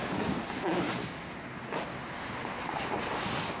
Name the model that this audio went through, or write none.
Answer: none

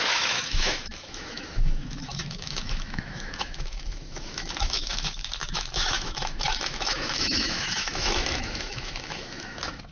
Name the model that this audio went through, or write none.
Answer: autoencoder, DAC-VAE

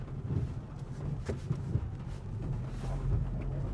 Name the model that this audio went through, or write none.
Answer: none